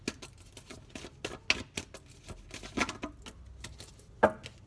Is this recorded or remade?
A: recorded